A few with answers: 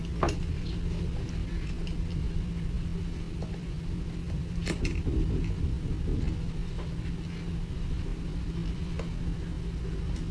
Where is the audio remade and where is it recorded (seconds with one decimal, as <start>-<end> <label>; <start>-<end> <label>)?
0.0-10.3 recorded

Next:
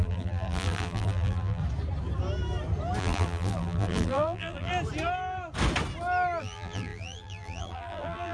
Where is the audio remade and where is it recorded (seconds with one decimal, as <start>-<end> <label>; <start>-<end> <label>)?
0.0-1.6 remade; 1.6-3.0 recorded; 3.0-4.7 remade; 4.7-6.4 recorded; 6.4-8.3 remade

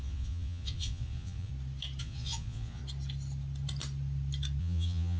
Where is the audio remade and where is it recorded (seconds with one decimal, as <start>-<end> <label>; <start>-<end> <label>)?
0.0-1.5 remade; 1.5-2.0 recorded; 2.0-2.8 remade; 2.8-4.6 recorded; 4.6-5.2 remade

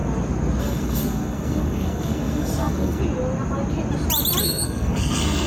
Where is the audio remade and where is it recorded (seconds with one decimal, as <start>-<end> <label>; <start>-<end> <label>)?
0.0-0.6 recorded; 0.6-3.0 remade; 3.0-4.4 recorded; 4.4-5.5 remade